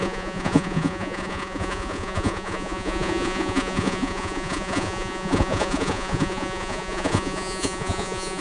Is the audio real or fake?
fake